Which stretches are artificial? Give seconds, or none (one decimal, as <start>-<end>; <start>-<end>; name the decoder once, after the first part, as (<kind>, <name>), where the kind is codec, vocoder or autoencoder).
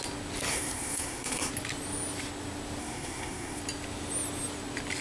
0.5-1.5 (codec, SNAC); 2.8-3.6